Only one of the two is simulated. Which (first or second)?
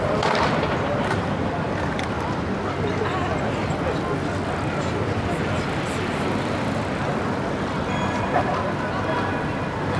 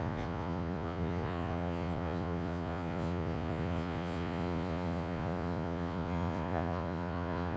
second